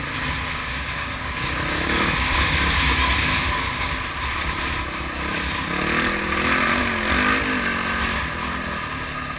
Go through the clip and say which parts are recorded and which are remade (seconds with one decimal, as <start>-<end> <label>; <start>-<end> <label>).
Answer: 0.0-0.6 recorded; 0.6-3.9 remade; 3.9-9.4 recorded